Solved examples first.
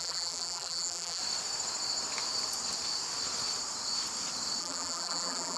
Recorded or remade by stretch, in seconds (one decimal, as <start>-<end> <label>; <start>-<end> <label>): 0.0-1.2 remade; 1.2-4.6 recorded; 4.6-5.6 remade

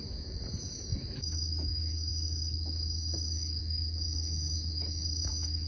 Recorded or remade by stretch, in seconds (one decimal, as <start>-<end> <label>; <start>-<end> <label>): 0.0-5.7 remade

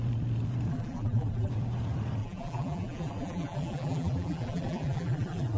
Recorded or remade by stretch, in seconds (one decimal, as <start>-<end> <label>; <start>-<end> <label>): 0.0-0.7 recorded; 0.7-1.5 remade; 1.5-2.2 recorded; 2.2-5.6 remade

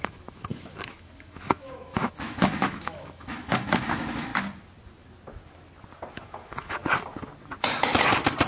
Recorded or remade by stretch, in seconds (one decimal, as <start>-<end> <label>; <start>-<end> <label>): 0.0-4.3 remade; 4.3-6.1 recorded; 6.1-6.8 remade; 6.8-8.5 recorded

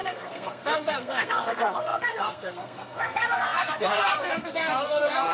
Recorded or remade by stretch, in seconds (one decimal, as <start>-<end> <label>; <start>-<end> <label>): 0.0-5.3 remade

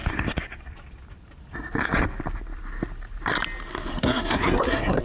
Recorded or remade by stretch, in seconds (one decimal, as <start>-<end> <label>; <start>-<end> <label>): 0.0-3.7 recorded; 3.7-5.0 remade

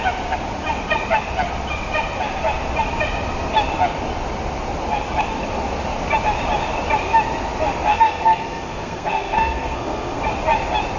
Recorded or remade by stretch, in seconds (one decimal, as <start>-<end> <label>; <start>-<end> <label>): 0.0-7.9 recorded; 7.9-10.2 remade; 10.2-11.0 recorded

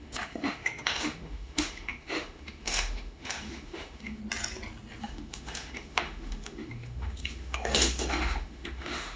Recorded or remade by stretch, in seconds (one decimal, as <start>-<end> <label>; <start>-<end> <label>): 0.0-4.2 remade; 4.2-5.0 recorded; 5.0-9.2 remade